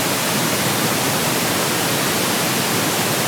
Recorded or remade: recorded